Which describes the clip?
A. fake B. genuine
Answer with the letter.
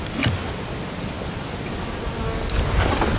B